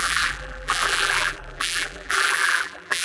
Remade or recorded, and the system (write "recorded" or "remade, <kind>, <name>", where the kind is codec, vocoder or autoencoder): remade, vocoder, BigVGAN v2